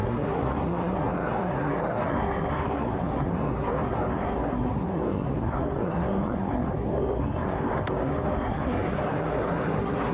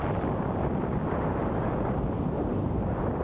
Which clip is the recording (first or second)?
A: second